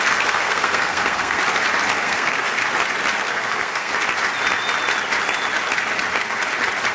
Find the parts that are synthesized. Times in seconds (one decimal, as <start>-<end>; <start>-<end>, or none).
0.0-1.4; 2.0-2.6; 3.2-3.9

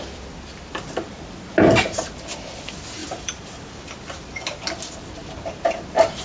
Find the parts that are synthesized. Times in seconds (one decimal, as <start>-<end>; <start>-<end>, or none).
3.0-3.5; 5.2-5.8

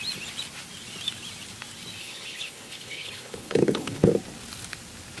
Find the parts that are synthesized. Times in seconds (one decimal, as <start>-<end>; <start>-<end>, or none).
2.0-4.1

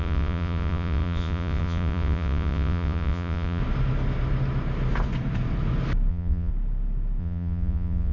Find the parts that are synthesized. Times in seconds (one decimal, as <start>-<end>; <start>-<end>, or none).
0.0-3.6; 6.1-6.5; 7.2-8.1

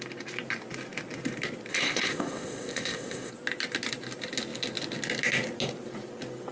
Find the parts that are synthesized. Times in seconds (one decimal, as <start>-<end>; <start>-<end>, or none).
1.7-3.3

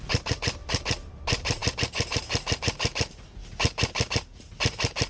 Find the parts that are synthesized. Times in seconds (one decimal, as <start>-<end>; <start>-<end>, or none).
none